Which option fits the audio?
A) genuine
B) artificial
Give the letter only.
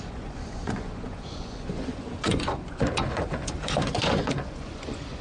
B